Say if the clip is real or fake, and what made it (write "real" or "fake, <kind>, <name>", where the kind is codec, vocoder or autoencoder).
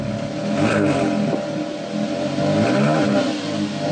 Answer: real